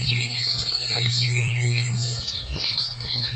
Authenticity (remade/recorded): remade